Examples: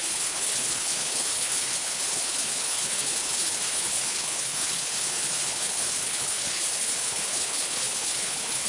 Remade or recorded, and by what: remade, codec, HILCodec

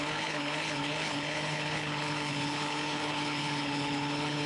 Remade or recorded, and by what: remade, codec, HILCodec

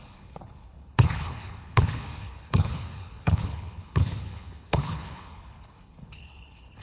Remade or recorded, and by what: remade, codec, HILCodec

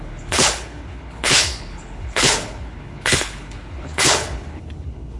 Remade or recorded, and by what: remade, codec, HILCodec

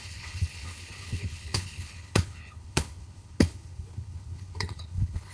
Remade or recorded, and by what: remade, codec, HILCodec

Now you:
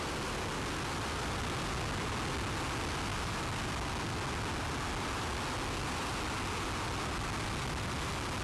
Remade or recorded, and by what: recorded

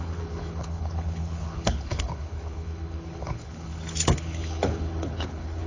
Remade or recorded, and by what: remade, codec, HILCodec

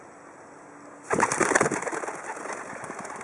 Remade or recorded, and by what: recorded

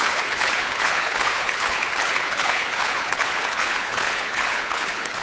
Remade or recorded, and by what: remade, codec, HILCodec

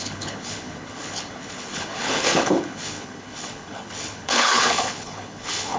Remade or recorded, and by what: remade, codec, HILCodec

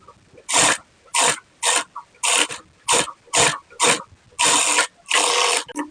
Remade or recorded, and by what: recorded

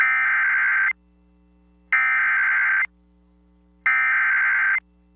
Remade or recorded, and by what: recorded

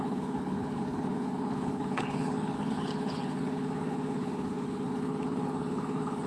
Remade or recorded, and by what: remade, codec, HILCodec